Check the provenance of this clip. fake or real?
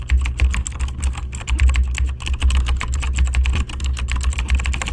real